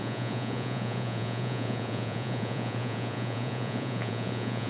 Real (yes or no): no